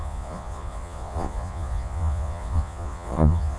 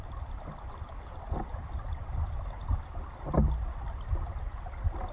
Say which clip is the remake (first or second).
first